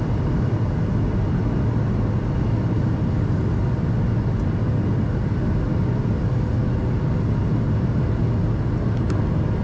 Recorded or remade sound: recorded